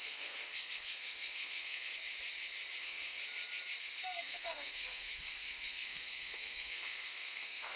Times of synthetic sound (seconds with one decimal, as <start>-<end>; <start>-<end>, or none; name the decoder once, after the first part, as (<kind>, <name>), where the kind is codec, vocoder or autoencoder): 0.0-1.9 (codec, SNAC); 2.8-3.2; 3.8-7.8